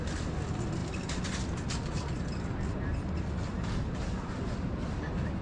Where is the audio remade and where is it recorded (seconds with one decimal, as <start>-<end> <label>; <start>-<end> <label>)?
0.0-5.4 recorded